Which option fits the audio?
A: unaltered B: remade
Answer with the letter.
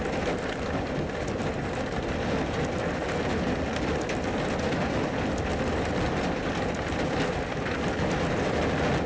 A